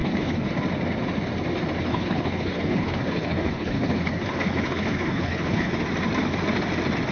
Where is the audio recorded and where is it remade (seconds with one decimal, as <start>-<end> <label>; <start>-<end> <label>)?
0.0-0.5 remade; 0.5-1.9 recorded; 1.9-5.7 remade; 5.7-7.1 recorded